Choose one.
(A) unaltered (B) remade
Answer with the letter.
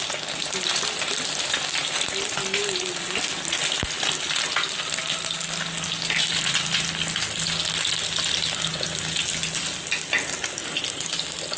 A